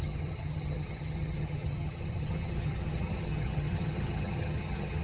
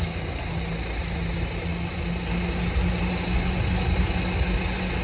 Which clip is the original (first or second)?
second